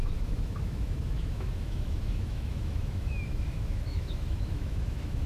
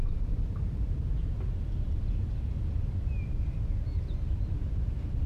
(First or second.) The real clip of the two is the second